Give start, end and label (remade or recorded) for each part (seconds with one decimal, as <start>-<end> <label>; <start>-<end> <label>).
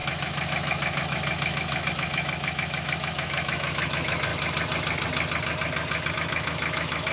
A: 0.0-4.3 remade; 4.3-6.1 recorded; 6.1-7.1 remade